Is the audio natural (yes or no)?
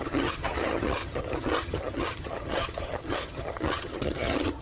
no